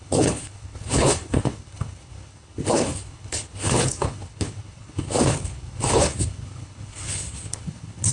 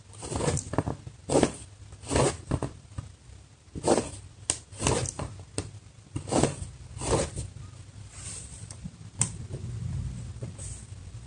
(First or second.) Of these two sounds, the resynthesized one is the first